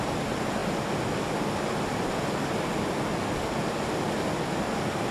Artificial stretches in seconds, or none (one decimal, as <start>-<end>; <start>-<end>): none